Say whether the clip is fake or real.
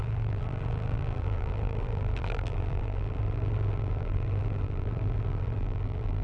fake